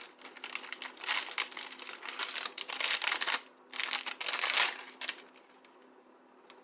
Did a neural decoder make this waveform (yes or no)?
no